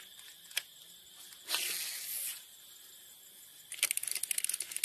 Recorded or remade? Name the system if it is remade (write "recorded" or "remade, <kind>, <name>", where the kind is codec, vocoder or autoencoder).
recorded